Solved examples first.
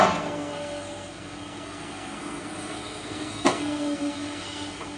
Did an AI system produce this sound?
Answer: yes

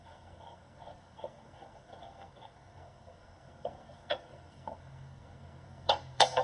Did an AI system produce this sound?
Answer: yes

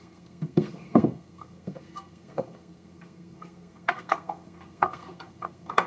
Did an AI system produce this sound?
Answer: yes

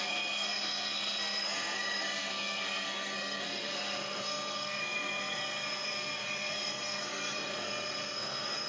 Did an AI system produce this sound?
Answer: yes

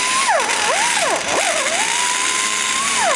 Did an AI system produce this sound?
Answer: no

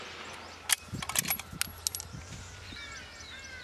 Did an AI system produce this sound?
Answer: no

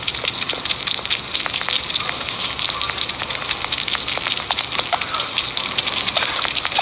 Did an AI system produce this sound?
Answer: no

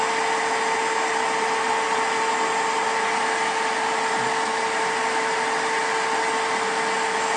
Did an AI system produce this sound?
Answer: no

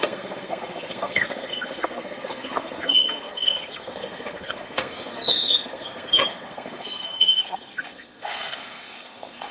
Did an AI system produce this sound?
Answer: yes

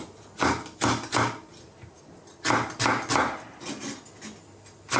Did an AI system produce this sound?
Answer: no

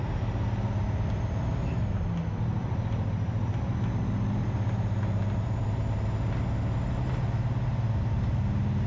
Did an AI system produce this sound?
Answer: no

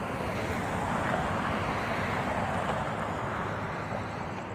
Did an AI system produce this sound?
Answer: no